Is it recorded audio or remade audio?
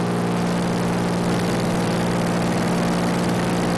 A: recorded